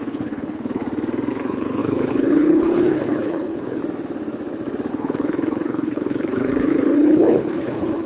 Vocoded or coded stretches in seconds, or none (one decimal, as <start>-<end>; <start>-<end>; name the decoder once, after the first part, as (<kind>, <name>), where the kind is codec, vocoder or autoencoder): 0.0-0.8 (codec, HILCodec); 1.3-3.8; 4.9-8.1